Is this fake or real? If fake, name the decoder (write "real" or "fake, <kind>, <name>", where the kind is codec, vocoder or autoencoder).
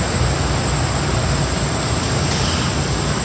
real